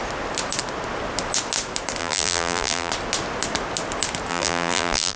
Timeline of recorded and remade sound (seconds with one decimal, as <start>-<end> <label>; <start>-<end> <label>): 0.0-2.0 recorded; 2.0-2.9 remade; 2.9-4.3 recorded; 4.3-5.2 remade